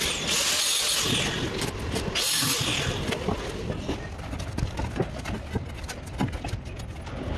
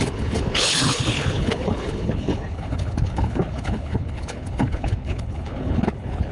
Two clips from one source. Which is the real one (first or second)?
first